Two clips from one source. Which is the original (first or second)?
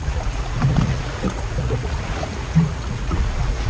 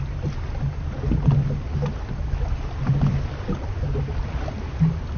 second